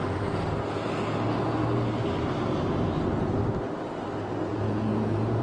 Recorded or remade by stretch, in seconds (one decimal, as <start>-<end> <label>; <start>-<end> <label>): 0.0-4.5 recorded; 4.5-5.4 remade

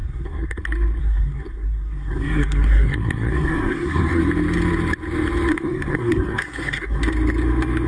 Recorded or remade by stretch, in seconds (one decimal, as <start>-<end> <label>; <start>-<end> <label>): 0.0-0.6 remade; 0.6-1.0 recorded; 1.0-4.2 remade; 4.2-5.5 recorded; 5.5-7.0 remade; 7.0-7.9 recorded